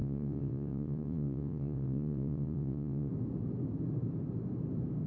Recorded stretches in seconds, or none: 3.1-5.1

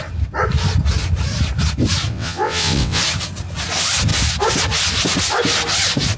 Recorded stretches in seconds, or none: 0.0-2.1; 3.0-6.2

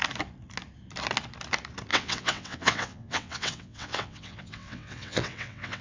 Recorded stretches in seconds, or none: 0.0-1.9

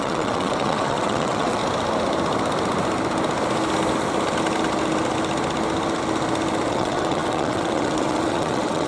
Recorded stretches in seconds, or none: 1.6-6.7

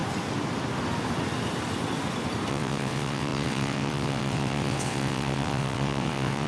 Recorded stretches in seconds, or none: 0.0-2.5

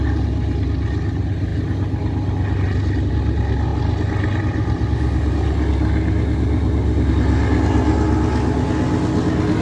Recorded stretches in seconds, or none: 0.0-9.6